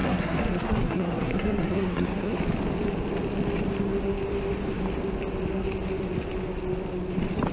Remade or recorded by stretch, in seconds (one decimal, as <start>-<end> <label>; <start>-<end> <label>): 0.0-2.4 remade; 2.4-7.5 recorded